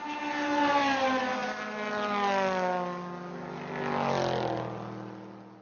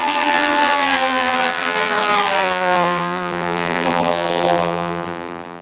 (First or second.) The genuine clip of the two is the first